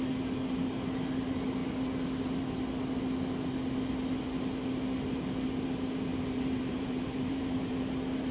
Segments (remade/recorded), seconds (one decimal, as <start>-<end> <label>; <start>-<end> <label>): 0.0-6.1 recorded; 6.1-7.7 remade; 7.7-8.3 recorded